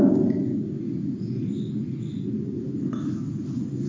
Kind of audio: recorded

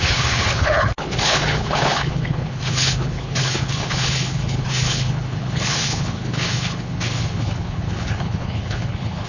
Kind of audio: remade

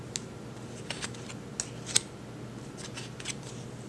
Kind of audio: recorded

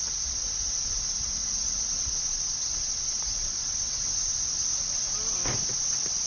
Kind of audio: recorded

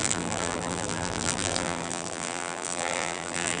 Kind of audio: remade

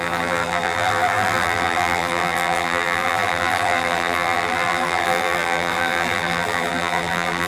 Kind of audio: remade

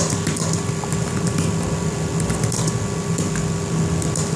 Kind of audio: recorded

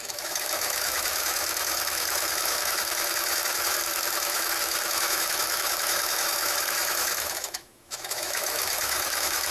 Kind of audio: remade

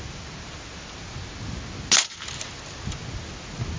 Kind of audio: recorded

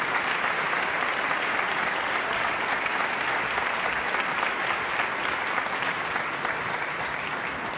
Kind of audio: recorded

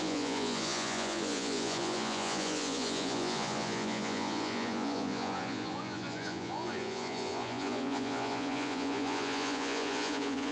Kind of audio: remade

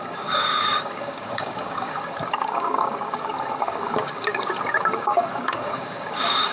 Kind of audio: remade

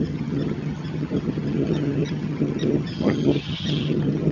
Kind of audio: remade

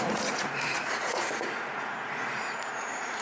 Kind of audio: remade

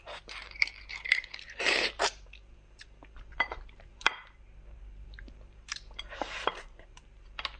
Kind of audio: remade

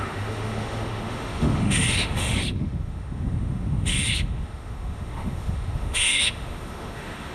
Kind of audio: remade